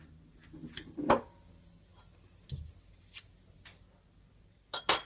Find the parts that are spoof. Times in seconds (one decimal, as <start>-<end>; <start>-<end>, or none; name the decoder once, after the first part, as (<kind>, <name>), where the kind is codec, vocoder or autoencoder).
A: none